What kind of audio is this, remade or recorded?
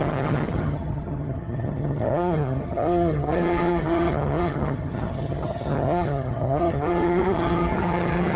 remade